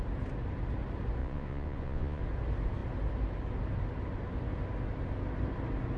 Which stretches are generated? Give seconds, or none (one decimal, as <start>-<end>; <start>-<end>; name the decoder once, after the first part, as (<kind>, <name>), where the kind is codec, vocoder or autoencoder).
1.2-2.2 (vocoder, Vocos)